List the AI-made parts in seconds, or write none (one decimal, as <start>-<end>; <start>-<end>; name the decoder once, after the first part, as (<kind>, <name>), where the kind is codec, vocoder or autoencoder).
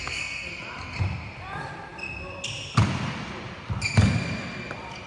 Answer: 0.0-0.5 (codec, SNAC)